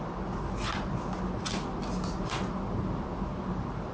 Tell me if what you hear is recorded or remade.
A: recorded